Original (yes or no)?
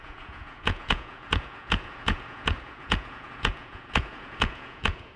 no